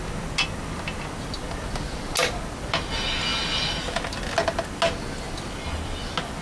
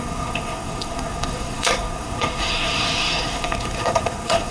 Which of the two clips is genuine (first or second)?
first